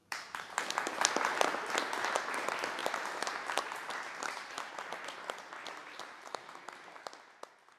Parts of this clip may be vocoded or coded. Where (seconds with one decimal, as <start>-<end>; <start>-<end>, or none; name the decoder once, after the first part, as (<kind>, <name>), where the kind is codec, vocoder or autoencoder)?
0.0-0.6 (vocoder, BigVGAN v2); 2.8-4.7; 5.8-6.5